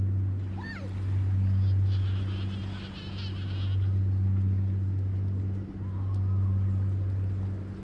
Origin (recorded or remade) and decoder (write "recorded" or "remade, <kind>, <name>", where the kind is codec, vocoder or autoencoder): recorded